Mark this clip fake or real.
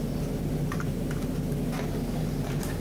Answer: real